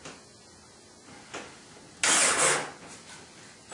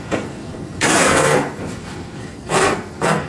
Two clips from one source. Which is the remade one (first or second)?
second